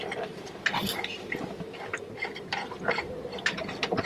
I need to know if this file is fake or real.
fake